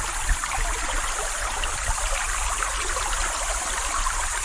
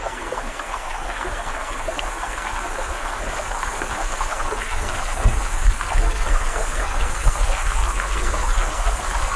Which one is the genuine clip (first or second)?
first